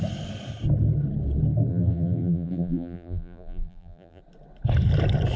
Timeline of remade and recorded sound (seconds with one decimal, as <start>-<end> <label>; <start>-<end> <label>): 0.0-1.7 recorded; 1.7-4.2 remade; 4.2-5.4 recorded